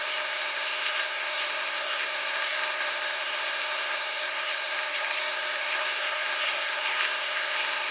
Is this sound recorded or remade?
remade